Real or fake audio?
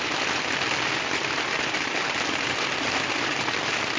real